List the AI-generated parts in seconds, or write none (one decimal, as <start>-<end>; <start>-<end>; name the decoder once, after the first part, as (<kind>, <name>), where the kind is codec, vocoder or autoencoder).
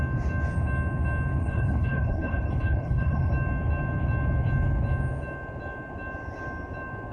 1.4-3.3 (codec, HILCodec)